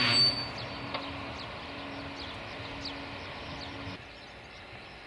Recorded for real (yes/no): yes